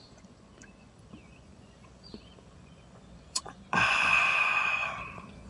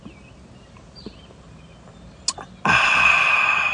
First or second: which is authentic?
second